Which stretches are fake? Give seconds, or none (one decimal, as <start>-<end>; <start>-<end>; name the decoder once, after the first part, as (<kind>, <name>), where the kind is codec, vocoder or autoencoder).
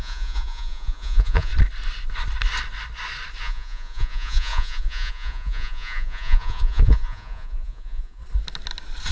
0.0-1.5 (vocoder, Vocos); 3.4-8.2